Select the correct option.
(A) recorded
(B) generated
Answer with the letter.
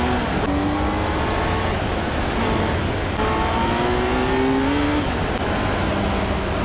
A